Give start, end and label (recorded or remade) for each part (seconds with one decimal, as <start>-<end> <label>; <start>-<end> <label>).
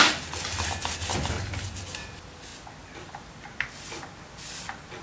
0.0-5.0 recorded